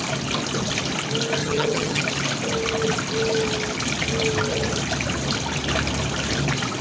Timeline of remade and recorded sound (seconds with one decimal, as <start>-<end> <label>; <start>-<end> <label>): 0.0-1.4 recorded; 1.4-2.0 remade; 2.0-6.8 recorded